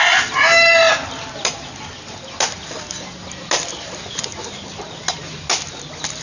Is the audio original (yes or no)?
yes